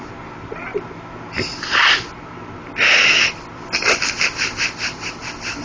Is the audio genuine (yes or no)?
yes